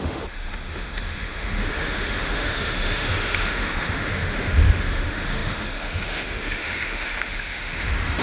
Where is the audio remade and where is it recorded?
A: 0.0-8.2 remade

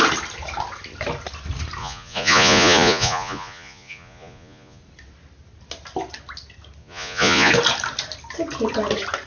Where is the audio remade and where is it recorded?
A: 0.0-1.8 recorded; 1.8-4.8 remade; 4.8-6.8 recorded; 6.8-7.5 remade; 7.5-9.3 recorded

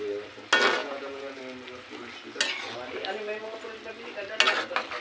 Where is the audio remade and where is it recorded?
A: 0.0-0.8 recorded; 0.8-1.4 remade; 1.4-5.0 recorded

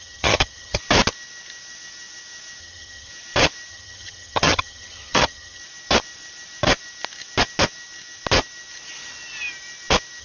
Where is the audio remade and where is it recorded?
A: 0.0-0.8 remade; 0.8-2.6 recorded; 2.6-3.1 remade; 3.1-3.7 recorded; 3.7-5.6 remade; 5.6-10.2 recorded

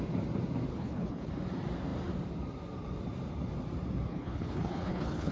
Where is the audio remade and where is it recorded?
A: 0.0-0.7 recorded; 0.7-1.3 remade; 1.3-4.1 recorded; 4.1-5.3 remade